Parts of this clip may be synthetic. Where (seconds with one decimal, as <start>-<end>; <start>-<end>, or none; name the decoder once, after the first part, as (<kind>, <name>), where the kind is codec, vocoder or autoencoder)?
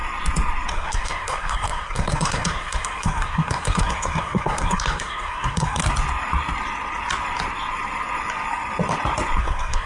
0.7-5.8 (codec, SNAC); 9.4-9.9